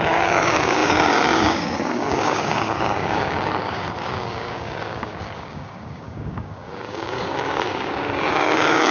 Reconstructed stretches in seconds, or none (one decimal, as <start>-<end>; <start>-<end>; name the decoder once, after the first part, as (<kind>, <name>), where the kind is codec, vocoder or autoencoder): 0.0-8.9 (codec, DAC)